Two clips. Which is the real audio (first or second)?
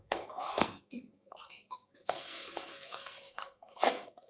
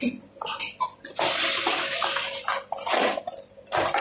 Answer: second